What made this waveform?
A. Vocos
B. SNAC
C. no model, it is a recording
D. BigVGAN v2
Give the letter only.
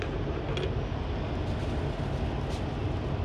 C